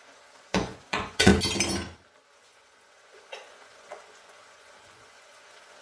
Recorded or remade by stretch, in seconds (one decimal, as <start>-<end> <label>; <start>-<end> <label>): 0.0-1.3 remade; 1.3-2.3 recorded; 2.3-5.8 remade